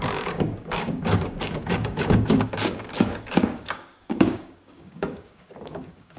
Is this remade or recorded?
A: remade